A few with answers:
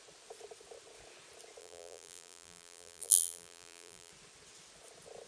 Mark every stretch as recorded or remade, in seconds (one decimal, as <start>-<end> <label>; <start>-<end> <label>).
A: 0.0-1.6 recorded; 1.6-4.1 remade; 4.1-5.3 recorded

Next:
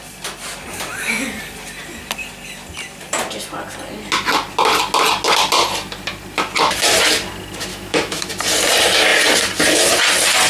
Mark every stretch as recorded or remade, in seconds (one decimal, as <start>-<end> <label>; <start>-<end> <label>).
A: 0.0-7.7 recorded; 7.7-8.3 remade; 8.3-10.5 recorded

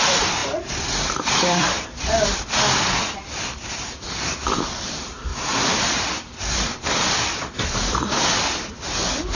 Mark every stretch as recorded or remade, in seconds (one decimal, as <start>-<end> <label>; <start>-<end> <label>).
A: 0.0-5.3 remade; 5.3-6.0 recorded; 6.0-9.3 remade

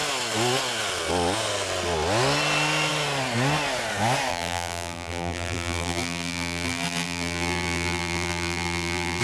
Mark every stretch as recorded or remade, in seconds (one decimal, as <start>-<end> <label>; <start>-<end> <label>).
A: 0.0-4.3 recorded; 4.3-9.2 remade

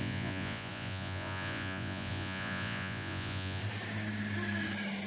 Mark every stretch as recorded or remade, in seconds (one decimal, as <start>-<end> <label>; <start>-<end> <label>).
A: 0.0-3.6 remade; 3.6-5.1 recorded

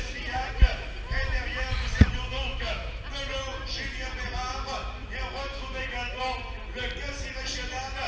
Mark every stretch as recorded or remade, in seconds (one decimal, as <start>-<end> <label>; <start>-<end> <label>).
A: 0.0-2.3 recorded; 2.3-3.0 remade; 3.0-5.4 recorded; 5.4-6.2 remade; 6.2-8.1 recorded

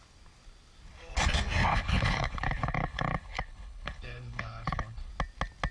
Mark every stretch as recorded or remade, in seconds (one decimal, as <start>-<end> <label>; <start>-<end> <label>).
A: 0.0-1.7 recorded; 1.7-5.1 remade; 5.1-5.7 recorded